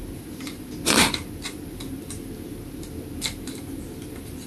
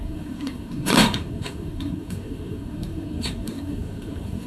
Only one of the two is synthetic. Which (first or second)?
second